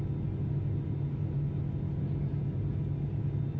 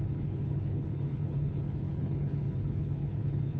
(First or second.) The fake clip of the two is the second